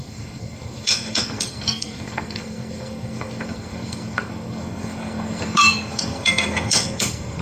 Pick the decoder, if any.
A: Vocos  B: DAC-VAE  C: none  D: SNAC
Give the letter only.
D